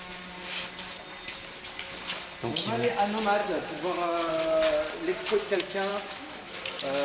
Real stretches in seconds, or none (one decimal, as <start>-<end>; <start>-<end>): 0.0-3.4; 4.3-5.9; 6.6-7.0